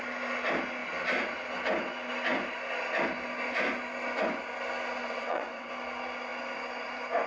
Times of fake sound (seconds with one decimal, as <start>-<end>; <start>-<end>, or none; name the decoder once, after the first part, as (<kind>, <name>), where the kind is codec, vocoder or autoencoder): 5.0-5.7 (vocoder, WaveNeXt)